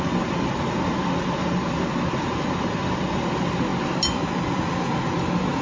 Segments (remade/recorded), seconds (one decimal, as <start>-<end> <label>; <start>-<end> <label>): 0.0-5.6 recorded

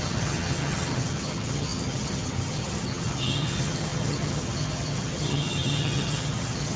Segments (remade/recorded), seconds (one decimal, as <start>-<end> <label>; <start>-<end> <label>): 0.0-6.8 remade

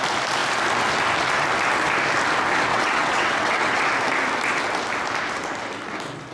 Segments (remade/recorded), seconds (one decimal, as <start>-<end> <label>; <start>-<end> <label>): 0.0-2.7 recorded; 2.7-3.8 remade; 3.8-6.3 recorded

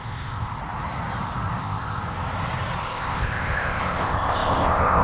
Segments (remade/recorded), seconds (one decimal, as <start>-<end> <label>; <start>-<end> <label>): 0.0-0.6 remade; 0.6-1.6 recorded; 1.6-2.0 remade; 2.0-2.8 recorded; 2.8-5.0 remade

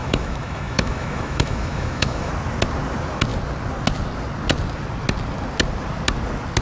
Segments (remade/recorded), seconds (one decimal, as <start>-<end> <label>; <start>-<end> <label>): 0.0-2.3 remade; 2.3-6.6 recorded